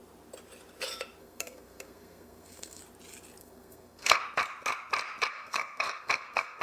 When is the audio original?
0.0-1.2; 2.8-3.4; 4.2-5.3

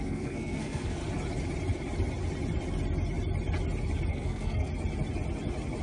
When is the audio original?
1.0-4.1; 4.7-5.8

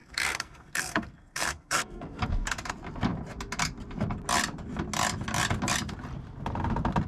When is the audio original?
2.7-7.1

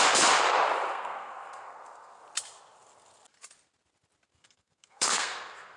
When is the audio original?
0.0-0.9; 2.2-4.3